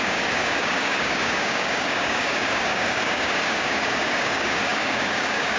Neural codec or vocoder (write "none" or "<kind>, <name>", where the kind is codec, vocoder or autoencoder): codec, DAC